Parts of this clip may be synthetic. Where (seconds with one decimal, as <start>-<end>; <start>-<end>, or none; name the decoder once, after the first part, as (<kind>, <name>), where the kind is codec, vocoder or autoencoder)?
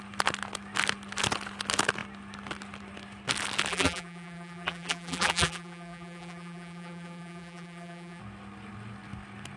3.7-8.2 (vocoder, BigVGAN v2)